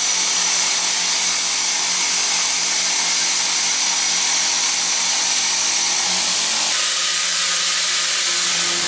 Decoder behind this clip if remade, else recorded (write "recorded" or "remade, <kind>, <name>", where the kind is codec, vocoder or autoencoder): recorded